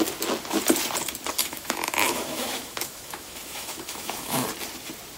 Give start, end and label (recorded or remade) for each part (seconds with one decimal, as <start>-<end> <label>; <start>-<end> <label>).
0.0-1.4 recorded; 1.4-4.5 remade; 4.5-5.2 recorded